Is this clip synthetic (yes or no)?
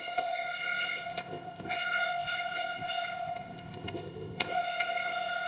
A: yes